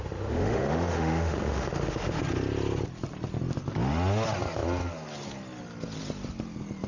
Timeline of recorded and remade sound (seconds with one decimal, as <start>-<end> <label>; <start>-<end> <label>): 0.0-2.2 remade; 2.2-6.9 recorded